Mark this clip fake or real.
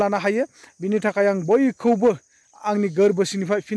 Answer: real